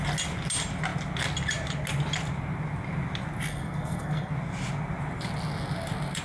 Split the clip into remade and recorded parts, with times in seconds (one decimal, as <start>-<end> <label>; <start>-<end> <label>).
0.0-3.5 recorded; 3.5-4.3 remade; 4.3-6.2 recorded